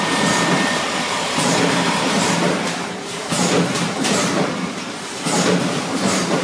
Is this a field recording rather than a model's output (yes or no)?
no